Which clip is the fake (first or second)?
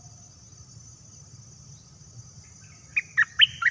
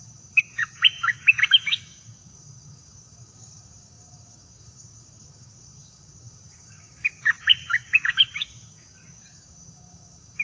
second